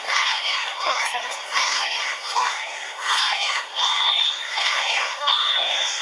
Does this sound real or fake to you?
fake